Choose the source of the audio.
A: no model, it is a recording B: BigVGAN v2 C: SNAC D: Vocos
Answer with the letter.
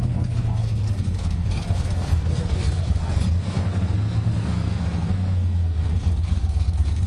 C